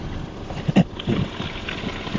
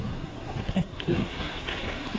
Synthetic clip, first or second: second